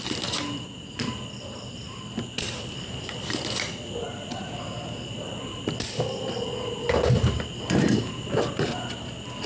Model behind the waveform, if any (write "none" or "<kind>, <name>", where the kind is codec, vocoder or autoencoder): vocoder, BigVGAN v2